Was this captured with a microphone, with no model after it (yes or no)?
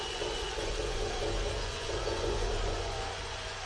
no